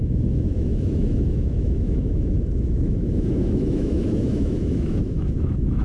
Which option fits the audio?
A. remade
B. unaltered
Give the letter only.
A